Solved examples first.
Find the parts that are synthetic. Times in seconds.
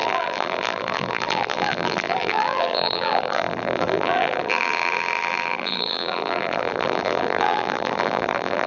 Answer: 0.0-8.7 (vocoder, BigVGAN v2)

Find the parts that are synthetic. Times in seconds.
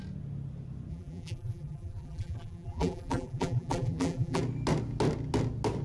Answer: 0.9-4.4 (vocoder, BigVGAN v2)